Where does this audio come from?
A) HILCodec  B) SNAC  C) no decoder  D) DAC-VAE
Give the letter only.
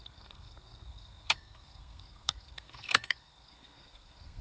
B